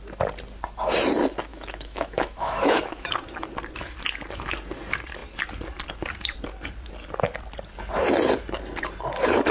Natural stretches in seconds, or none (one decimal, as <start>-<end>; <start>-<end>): 0.0-1.5; 3.1-9.5